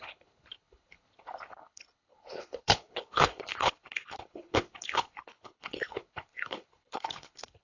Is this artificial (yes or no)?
yes